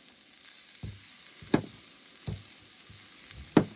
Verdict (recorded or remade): recorded